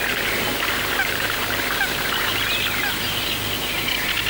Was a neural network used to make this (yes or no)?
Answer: no